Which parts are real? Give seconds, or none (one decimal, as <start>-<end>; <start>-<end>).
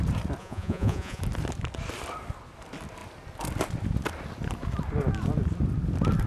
0.0-0.4; 1.2-6.3